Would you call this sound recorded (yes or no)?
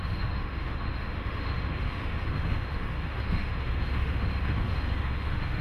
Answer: no